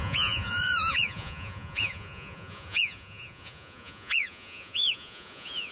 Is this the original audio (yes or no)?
no